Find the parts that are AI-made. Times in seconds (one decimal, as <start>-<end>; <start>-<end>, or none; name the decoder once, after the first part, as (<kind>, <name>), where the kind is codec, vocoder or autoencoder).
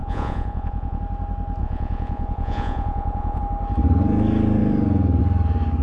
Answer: 0.0-1.0 (vocoder, Vocos); 1.6-3.4